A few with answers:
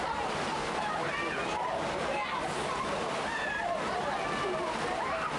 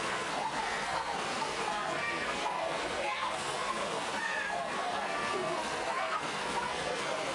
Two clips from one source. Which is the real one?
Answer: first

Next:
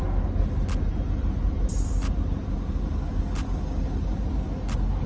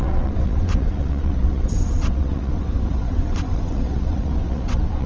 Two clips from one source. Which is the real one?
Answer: first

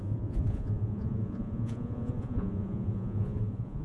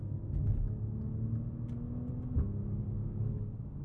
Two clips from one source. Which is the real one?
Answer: second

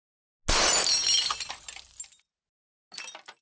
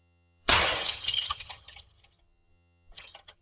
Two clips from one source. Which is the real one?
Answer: first